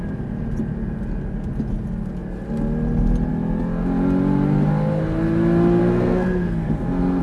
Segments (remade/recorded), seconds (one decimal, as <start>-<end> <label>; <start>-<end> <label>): 0.0-5.8 recorded; 5.8-7.2 remade